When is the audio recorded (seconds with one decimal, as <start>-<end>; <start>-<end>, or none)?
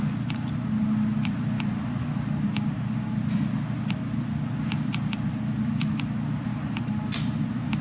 0.0-7.8